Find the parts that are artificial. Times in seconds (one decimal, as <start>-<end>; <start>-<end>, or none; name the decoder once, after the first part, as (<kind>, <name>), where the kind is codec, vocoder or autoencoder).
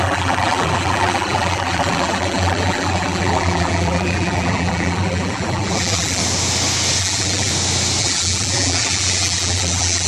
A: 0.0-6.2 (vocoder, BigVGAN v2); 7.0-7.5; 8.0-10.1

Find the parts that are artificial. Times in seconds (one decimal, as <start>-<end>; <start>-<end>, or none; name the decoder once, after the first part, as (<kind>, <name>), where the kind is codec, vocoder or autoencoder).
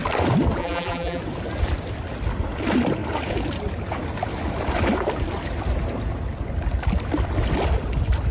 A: 0.6-1.2 (vocoder, BigVGAN v2)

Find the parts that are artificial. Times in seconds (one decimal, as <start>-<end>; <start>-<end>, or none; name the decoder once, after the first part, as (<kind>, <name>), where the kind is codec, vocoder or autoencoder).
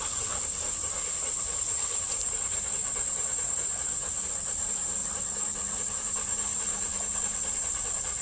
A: 0.0-8.2 (vocoder, BigVGAN v2)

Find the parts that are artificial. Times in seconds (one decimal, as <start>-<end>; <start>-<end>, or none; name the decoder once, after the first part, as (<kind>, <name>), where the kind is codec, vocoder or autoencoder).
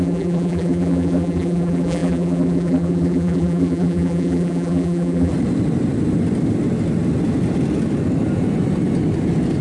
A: 0.0-5.3 (vocoder, BigVGAN v2)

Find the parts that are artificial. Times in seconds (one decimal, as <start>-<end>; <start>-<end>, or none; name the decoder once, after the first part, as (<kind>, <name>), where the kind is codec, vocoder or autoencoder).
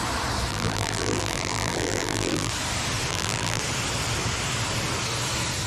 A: 0.5-2.5 (vocoder, BigVGAN v2); 3.1-3.6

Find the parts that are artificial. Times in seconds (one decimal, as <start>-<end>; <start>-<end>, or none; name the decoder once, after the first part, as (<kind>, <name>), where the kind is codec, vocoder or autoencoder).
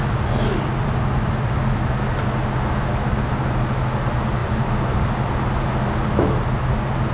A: 4.4-5.0 (vocoder, BigVGAN v2)